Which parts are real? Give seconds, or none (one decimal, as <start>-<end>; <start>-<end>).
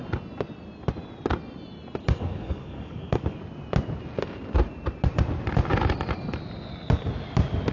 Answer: 0.0-2.0; 3.4-7.7